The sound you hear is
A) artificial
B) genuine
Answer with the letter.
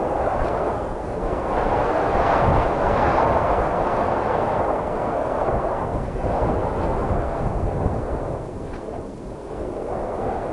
A